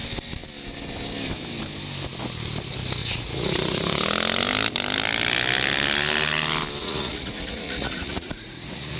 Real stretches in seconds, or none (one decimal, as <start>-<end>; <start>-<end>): 0.0-3.0; 4.0-6.8